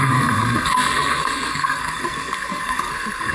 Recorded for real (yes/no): no